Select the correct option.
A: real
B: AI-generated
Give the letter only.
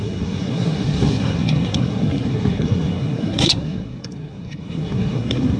B